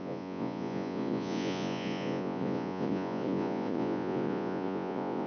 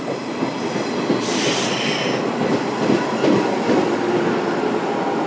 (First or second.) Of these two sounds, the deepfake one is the first